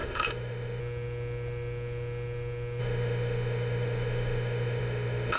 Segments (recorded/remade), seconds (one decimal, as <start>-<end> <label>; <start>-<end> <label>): 0.0-0.8 remade; 0.8-2.8 recorded; 2.8-5.4 remade